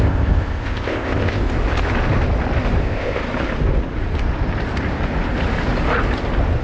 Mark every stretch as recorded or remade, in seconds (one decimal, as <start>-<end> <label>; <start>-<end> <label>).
0.0-1.4 remade; 1.4-2.8 recorded; 2.8-3.2 remade; 3.2-6.6 recorded

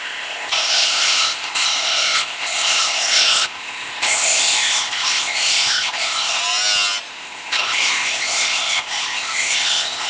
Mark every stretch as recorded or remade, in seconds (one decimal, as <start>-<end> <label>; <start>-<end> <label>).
0.0-6.4 remade; 6.4-7.1 recorded; 7.1-10.1 remade

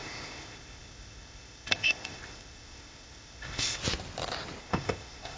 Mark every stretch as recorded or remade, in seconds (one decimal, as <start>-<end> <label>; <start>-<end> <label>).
0.0-3.8 remade; 3.8-4.6 recorded; 4.6-5.4 remade

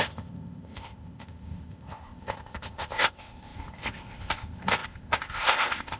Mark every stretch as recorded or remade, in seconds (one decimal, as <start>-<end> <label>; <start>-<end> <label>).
0.0-6.0 remade